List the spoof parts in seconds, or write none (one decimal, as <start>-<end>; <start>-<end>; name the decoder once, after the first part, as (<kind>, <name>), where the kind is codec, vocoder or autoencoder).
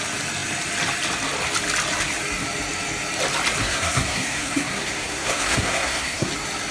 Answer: 3.6-6.3 (codec, SNAC)